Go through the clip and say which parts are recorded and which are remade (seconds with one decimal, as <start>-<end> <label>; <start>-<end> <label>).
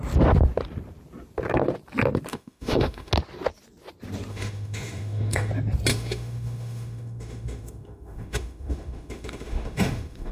0.0-2.3 recorded; 2.3-3.1 remade; 3.1-4.3 recorded; 4.3-5.5 remade; 5.5-5.9 recorded; 5.9-10.3 remade